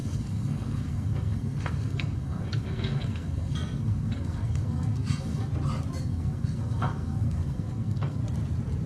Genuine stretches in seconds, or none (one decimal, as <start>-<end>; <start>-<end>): 5.5-6.0; 8.2-8.9